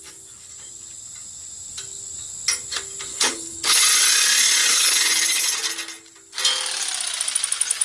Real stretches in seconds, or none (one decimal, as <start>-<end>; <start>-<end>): 0.0-3.1; 3.8-4.7; 5.5-7.8